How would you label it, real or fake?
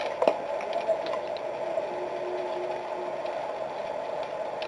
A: real